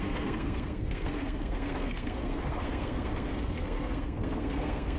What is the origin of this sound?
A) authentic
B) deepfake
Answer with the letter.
B